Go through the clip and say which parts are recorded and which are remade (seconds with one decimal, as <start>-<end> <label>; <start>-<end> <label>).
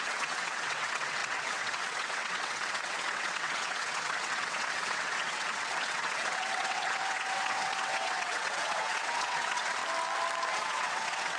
0.0-9.8 remade; 9.8-10.5 recorded; 10.5-11.4 remade